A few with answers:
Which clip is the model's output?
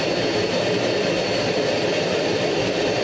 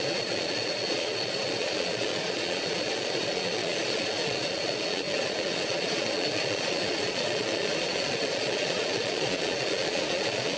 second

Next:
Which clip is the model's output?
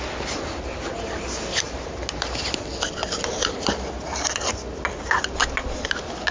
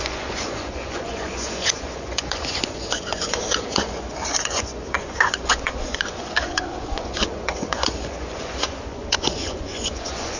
second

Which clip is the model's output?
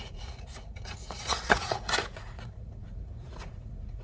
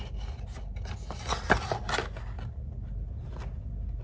first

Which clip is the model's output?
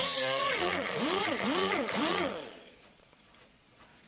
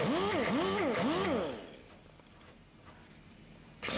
first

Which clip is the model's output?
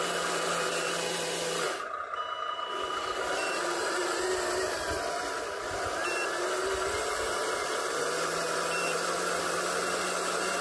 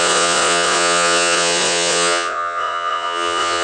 second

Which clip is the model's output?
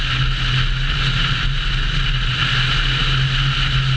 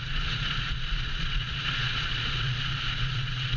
second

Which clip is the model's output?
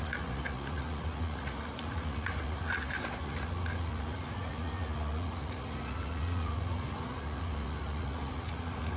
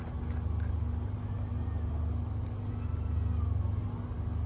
first